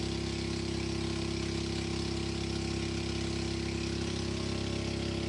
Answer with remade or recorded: recorded